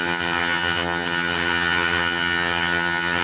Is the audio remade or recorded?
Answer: remade